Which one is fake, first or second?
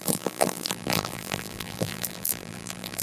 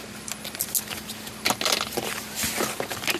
first